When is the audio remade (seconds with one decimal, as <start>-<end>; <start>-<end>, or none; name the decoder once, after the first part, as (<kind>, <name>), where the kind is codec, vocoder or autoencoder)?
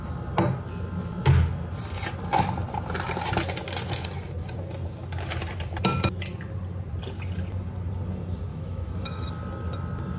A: 8.5-9.3 (autoencoder, DAC-VAE)